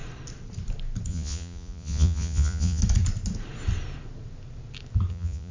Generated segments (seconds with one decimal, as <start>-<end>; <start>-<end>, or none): 1.1-2.8; 5.1-5.5